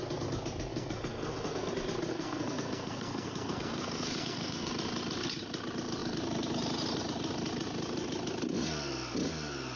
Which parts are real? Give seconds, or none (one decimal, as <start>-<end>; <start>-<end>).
0.0-0.7; 1.7-2.1; 4.7-9.8